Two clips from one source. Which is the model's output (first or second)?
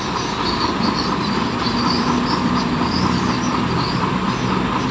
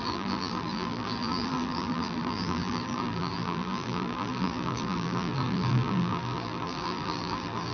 second